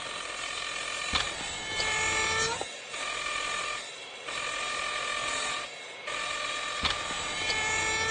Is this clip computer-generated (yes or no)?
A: no